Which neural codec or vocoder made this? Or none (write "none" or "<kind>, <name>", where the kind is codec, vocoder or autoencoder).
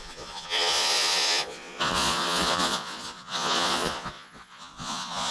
vocoder, Vocos